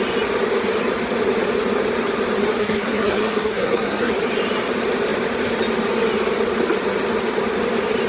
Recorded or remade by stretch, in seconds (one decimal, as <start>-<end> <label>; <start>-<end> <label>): 0.0-2.6 recorded; 2.6-4.1 remade; 4.1-8.1 recorded